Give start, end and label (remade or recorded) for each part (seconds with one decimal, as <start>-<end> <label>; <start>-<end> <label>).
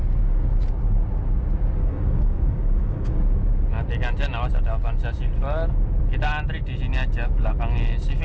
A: 0.0-1.8 recorded; 1.8-3.2 remade; 3.2-8.2 recorded